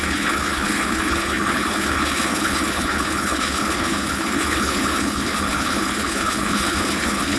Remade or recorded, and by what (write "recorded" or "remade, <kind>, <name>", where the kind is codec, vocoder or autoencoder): remade, codec, HILCodec